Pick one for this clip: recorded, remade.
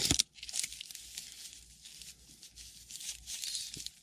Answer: recorded